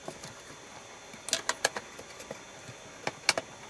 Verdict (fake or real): real